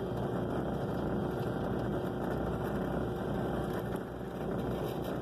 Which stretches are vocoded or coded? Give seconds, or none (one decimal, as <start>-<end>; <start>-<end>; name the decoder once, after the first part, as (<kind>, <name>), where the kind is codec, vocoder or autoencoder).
none